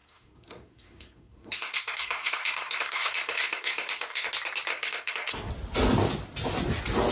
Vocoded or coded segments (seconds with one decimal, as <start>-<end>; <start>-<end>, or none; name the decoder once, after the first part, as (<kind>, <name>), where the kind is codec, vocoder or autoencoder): 0.0-4.3 (codec, SNAC); 4.7-5.5